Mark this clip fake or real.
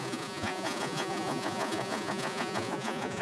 fake